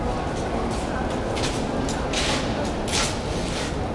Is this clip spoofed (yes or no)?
no